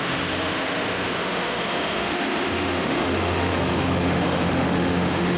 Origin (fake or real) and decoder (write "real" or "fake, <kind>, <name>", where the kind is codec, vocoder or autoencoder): fake, autoencoder, DAC-VAE